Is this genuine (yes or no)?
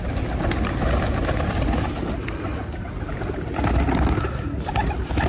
yes